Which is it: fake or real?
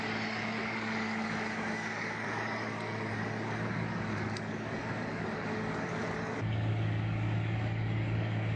fake